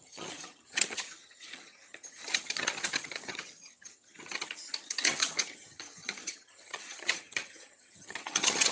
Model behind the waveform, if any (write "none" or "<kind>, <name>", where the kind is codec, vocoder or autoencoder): vocoder, HiFi-GAN